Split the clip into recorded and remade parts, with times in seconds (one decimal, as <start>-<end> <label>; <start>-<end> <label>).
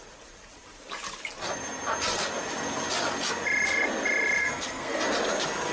0.0-4.4 recorded; 4.4-5.0 remade; 5.0-5.7 recorded